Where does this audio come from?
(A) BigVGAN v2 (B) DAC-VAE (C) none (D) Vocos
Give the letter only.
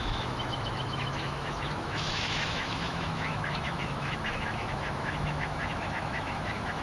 B